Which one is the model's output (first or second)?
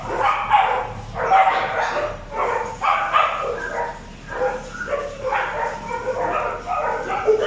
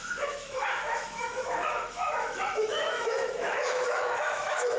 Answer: second